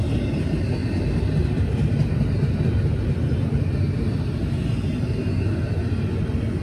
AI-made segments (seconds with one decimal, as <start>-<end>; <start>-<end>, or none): 0.8-1.3